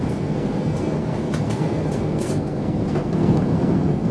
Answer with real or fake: fake